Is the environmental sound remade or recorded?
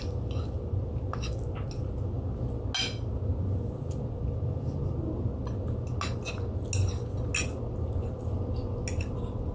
recorded